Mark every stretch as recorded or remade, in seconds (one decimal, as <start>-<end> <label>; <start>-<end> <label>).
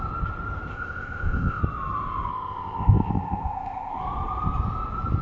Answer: 0.0-0.7 recorded; 0.7-1.6 remade; 1.6-2.3 recorded; 2.3-4.0 remade; 4.0-5.2 recorded